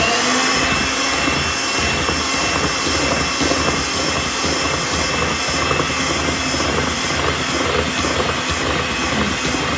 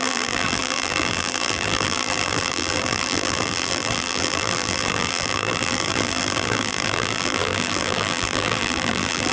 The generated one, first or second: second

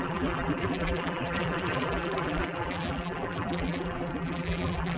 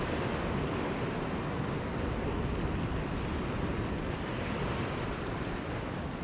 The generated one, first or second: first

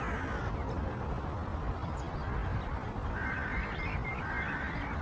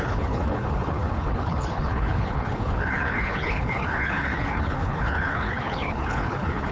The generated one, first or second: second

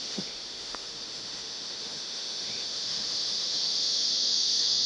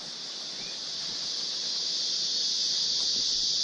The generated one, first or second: first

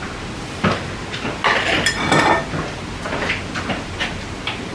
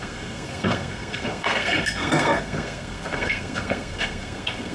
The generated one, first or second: second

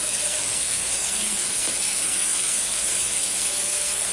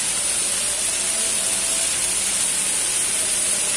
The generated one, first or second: first